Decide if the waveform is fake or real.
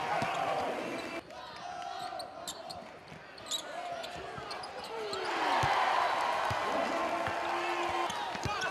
real